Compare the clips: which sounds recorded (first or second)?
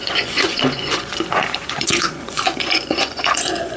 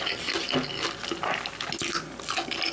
second